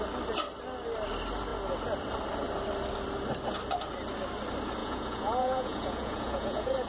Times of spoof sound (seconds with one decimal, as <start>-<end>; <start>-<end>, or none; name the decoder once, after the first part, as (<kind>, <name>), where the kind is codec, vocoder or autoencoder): 4.8-6.9 (vocoder, Vocos)